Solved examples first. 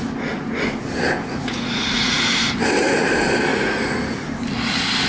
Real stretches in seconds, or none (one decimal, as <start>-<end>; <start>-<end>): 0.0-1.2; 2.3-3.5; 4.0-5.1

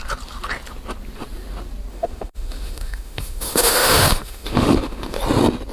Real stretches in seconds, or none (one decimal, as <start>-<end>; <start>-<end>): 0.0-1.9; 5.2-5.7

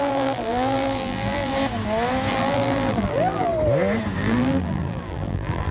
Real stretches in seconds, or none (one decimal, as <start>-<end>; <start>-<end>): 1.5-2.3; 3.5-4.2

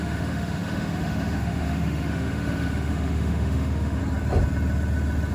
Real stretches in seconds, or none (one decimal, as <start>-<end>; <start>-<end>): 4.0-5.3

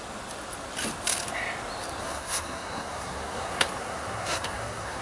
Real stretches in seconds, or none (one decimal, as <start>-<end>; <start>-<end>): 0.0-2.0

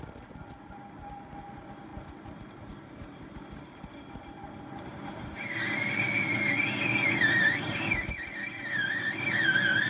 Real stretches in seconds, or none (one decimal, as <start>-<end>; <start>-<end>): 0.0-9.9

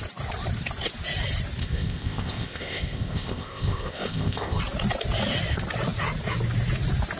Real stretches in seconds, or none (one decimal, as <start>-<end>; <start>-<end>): 0.0-1.6; 4.6-7.2